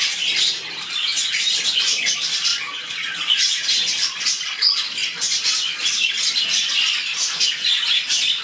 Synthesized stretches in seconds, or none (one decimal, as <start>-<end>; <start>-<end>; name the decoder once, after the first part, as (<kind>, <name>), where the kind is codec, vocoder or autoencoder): 0.0-1.1 (vocoder, BigVGAN v2); 1.7-2.5; 3.3-8.4